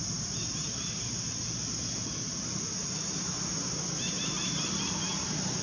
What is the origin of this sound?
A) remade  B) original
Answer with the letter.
B